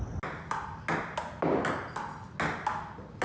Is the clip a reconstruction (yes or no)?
no